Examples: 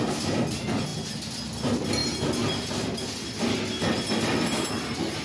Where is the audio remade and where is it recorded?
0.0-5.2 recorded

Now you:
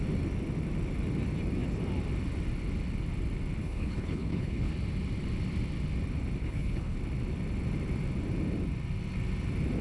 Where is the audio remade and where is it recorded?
0.0-3.6 recorded; 3.6-4.7 remade; 4.7-6.4 recorded; 6.4-7.0 remade; 7.0-9.8 recorded

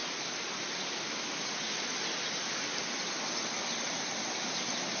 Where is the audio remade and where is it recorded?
0.0-5.0 recorded